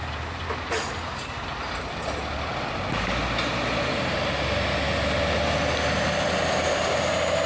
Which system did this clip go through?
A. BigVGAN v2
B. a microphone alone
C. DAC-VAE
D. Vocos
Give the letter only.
B